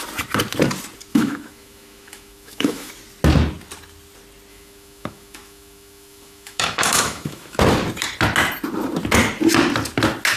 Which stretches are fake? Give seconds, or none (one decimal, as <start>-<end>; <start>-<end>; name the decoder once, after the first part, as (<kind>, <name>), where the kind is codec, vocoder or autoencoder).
1.1-2.9 (autoencoder, DAC-VAE); 4.5-7.6